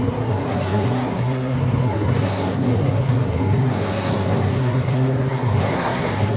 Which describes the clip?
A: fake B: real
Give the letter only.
A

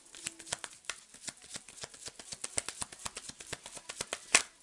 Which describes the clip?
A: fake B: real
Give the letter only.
B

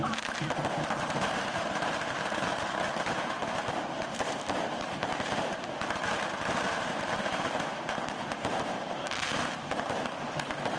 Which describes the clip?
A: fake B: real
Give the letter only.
A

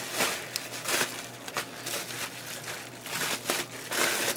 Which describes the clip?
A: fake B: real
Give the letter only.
B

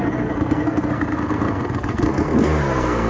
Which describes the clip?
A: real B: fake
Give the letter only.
B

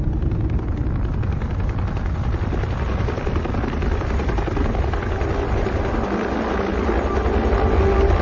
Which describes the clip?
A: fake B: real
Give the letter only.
B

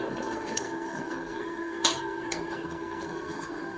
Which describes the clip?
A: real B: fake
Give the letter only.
B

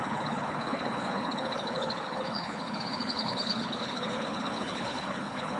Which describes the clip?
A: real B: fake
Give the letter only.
B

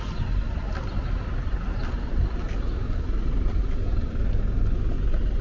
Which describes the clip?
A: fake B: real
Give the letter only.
B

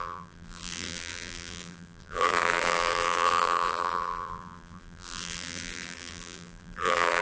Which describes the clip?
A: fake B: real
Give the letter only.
A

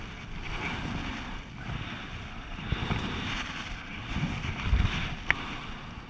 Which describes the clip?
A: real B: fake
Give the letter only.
A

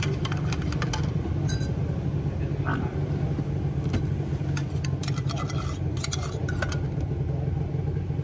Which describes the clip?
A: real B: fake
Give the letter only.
A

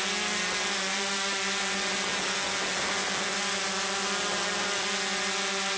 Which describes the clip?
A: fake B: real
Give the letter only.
B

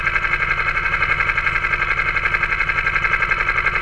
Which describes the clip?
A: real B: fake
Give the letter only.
A